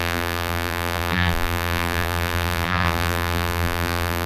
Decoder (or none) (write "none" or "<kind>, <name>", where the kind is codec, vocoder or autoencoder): vocoder, BigVGAN v2